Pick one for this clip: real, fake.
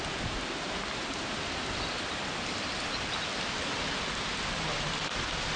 real